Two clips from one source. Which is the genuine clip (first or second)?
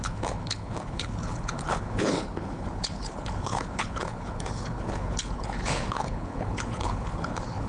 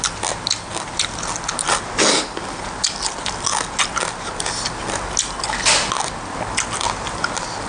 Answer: second